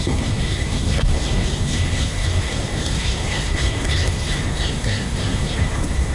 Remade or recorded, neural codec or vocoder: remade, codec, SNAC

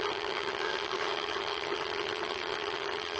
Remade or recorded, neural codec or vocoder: remade, vocoder, HiFi-GAN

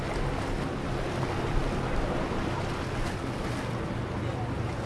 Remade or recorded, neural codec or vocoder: recorded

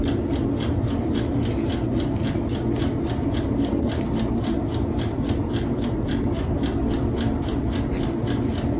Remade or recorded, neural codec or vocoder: recorded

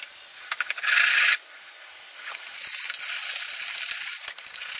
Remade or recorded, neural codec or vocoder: recorded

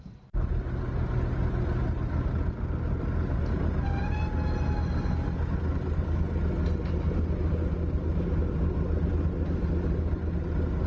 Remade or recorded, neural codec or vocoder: recorded